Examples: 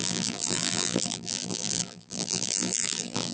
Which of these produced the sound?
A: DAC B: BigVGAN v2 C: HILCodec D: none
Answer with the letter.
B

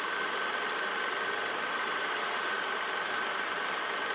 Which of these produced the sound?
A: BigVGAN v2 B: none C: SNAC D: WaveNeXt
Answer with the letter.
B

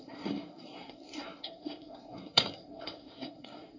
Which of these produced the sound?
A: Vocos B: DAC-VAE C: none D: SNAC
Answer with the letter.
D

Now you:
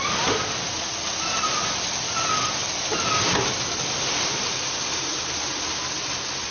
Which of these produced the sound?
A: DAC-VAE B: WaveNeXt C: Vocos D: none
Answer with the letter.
D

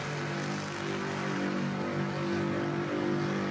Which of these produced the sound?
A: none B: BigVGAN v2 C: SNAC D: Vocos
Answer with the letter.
A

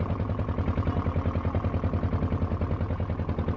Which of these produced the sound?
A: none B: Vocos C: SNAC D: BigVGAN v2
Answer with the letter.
A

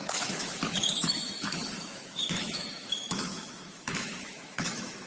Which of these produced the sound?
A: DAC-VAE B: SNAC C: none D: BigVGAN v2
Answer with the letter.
A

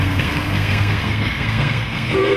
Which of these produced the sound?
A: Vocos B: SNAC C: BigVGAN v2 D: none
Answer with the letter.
B